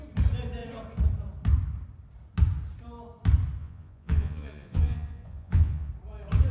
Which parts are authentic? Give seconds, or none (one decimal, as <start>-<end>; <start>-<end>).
0.0-3.6; 5.9-6.5